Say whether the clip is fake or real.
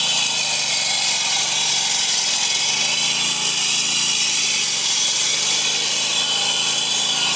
real